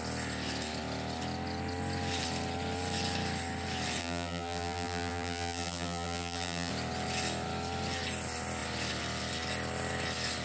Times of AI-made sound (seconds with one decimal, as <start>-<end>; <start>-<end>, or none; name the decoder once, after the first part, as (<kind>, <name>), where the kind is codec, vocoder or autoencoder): 4.0-6.7 (vocoder, BigVGAN v2)

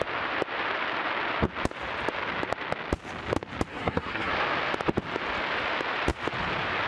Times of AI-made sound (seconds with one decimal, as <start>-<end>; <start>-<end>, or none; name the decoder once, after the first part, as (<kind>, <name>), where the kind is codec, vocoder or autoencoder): 3.7-4.3 (codec, SNAC)

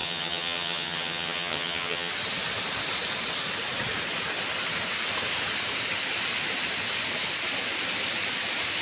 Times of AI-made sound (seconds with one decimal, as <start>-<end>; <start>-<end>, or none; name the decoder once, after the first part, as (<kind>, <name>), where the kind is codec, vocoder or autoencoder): 0.0-2.1 (vocoder, HiFi-GAN)